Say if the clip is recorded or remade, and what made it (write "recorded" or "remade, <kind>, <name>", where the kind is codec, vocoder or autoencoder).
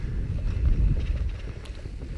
recorded